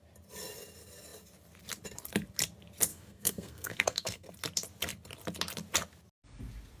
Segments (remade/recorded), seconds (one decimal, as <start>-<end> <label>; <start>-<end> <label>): 0.0-2.9 recorded; 2.9-4.3 remade; 4.3-6.8 recorded